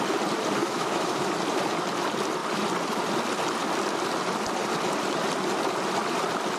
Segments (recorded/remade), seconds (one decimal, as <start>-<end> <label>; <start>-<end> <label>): 0.0-0.6 recorded; 0.6-1.3 remade; 1.3-6.6 recorded